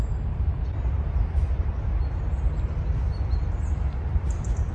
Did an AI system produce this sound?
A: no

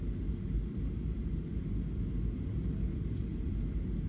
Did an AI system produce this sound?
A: no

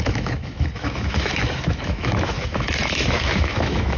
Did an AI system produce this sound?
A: yes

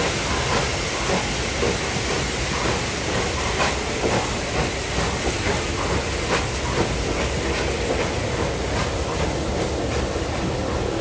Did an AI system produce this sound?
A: no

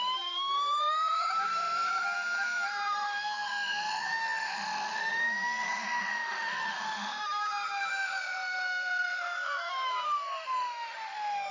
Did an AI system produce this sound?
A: yes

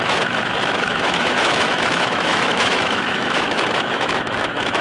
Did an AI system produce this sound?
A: yes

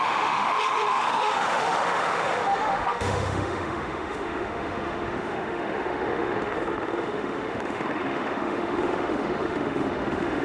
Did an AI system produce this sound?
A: yes